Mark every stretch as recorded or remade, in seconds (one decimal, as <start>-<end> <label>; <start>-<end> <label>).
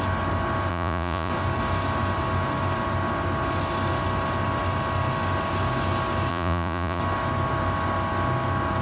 0.0-0.7 recorded; 0.7-1.3 remade; 1.3-6.3 recorded; 6.3-7.0 remade; 7.0-8.8 recorded